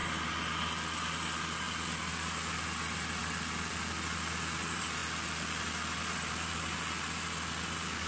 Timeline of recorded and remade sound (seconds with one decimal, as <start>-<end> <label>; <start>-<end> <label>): 0.0-8.1 recorded